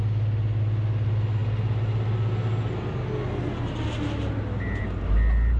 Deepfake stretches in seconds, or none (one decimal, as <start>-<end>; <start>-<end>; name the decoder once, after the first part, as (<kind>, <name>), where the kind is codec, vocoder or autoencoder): none